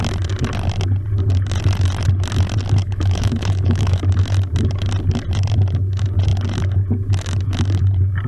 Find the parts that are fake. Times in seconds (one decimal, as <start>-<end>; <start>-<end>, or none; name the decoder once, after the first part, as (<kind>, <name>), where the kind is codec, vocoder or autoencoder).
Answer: 2.8-4.0 (autoencoder, DAC-VAE)